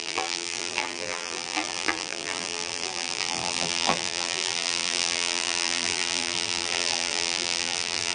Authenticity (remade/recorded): remade